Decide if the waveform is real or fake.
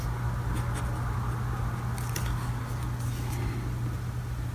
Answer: real